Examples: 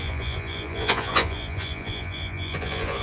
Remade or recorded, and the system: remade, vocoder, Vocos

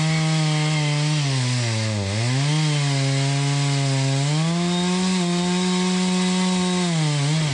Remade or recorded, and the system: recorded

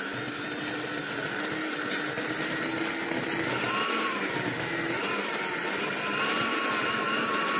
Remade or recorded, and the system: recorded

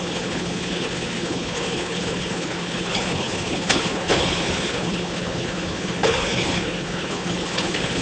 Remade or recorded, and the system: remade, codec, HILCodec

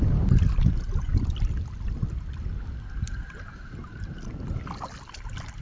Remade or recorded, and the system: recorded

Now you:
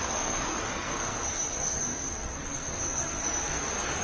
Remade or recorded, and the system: remade, codec, SNAC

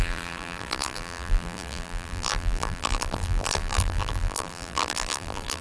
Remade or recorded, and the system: remade, vocoder, BigVGAN v2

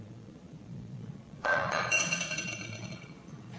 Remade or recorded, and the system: remade, vocoder, Vocos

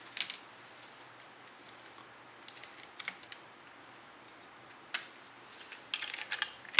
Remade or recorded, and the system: recorded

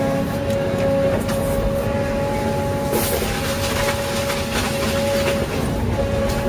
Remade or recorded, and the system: recorded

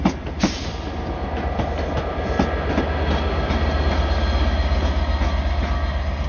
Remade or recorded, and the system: recorded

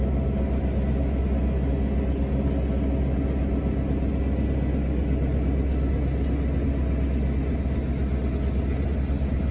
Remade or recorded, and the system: recorded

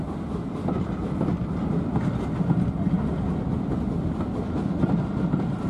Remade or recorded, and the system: recorded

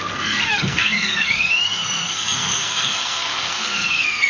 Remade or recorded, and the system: remade, codec, SNAC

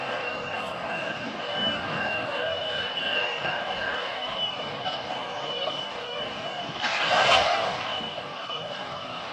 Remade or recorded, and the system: remade, codec, DAC